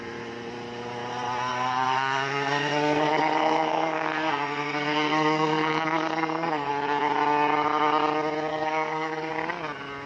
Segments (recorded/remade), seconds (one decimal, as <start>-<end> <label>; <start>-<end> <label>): 0.0-1.5 recorded; 1.5-6.7 remade; 6.7-8.5 recorded; 8.5-9.3 remade; 9.3-10.1 recorded